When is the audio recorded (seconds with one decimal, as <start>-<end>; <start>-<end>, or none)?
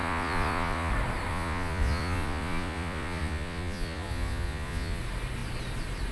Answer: 0.9-1.3; 5.0-6.1